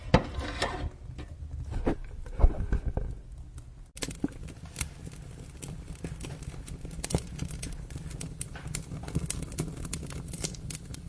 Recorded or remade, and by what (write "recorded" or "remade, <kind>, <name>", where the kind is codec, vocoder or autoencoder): recorded